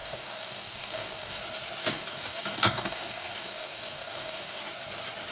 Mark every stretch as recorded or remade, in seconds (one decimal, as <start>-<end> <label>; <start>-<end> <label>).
0.0-1.4 remade; 1.4-1.8 recorded; 1.8-4.6 remade; 4.6-5.3 recorded

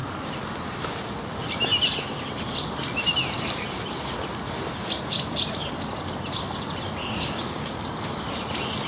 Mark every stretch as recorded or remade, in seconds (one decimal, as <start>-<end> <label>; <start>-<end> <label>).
0.0-7.0 recorded; 7.0-8.2 remade; 8.2-8.9 recorded

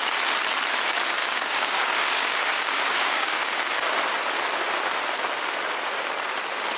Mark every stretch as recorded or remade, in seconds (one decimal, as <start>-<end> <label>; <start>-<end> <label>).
0.0-1.2 recorded; 1.2-3.7 remade; 3.7-6.8 recorded

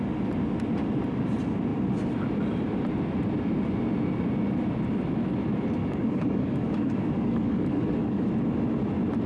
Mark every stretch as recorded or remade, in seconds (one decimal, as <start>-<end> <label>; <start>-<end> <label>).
0.0-5.8 recorded; 5.8-8.3 remade; 8.3-9.3 recorded